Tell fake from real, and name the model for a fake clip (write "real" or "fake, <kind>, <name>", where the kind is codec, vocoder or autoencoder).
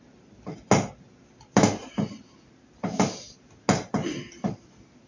real